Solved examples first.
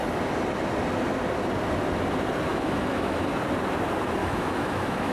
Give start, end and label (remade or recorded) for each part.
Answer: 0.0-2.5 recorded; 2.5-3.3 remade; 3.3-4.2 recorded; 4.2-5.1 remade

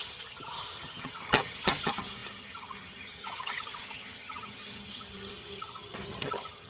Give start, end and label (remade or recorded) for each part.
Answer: 0.0-6.7 remade

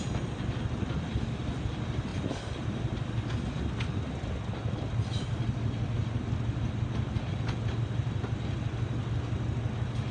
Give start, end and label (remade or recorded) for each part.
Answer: 0.0-10.1 recorded

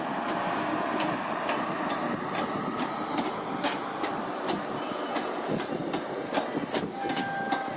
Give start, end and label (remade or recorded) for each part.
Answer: 0.0-7.8 recorded

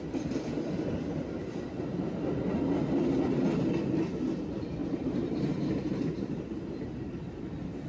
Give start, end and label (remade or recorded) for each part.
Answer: 0.0-4.8 recorded; 4.8-7.4 remade; 7.4-7.9 recorded